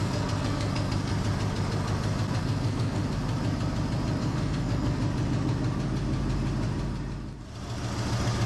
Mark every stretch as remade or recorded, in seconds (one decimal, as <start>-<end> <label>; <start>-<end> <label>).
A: 0.0-1.1 remade; 1.1-2.4 recorded; 2.4-3.0 remade; 3.0-4.2 recorded; 4.2-5.0 remade; 5.0-8.5 recorded